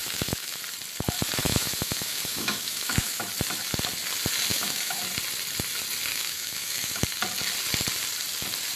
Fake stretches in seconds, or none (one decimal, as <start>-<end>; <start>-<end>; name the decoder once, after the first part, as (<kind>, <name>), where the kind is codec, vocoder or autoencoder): 0.0-0.6 (autoencoder, DAC-VAE); 1.4-3.2; 4.5-5.0; 6.1-7.0